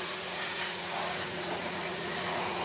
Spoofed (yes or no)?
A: yes